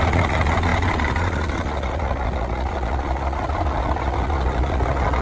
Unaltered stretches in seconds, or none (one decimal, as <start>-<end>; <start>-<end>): none